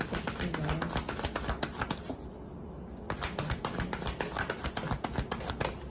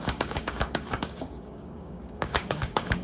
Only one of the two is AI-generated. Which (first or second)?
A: second